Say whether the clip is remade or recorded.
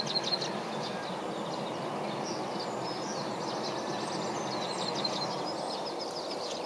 recorded